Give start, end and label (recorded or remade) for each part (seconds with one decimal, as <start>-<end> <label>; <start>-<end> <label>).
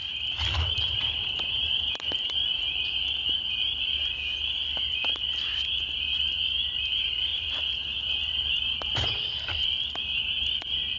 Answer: 0.0-11.0 remade